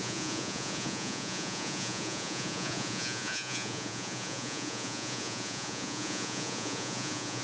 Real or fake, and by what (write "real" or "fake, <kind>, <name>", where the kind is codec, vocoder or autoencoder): fake, vocoder, Vocos